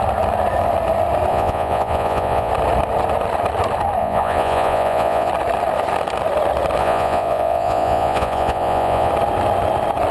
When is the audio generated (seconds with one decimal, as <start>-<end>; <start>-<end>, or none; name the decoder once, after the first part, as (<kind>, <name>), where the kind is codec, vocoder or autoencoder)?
1.3-2.5 (vocoder, Vocos); 4.0-5.3; 6.8-9.1